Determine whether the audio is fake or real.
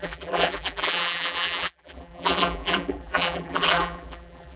fake